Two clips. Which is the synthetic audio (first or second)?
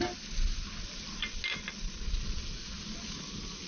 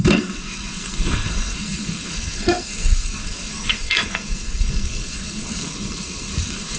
second